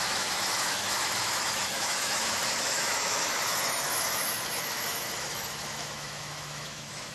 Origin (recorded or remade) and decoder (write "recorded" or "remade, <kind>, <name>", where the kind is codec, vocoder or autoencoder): remade, autoencoder, DAC-VAE